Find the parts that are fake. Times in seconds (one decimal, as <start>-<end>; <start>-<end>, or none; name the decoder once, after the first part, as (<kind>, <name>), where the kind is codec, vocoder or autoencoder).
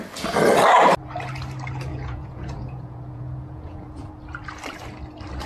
1.9-4.1 (vocoder, Vocos)